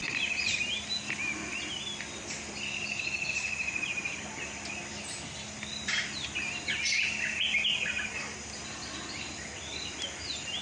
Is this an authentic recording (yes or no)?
yes